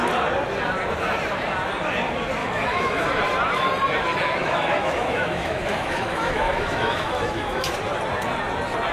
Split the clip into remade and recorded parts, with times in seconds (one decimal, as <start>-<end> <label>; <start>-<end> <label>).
0.0-2.4 recorded; 2.4-3.1 remade; 3.1-4.4 recorded; 4.4-7.7 remade; 7.7-8.9 recorded